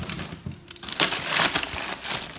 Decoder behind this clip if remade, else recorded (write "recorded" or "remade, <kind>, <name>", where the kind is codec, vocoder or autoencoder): recorded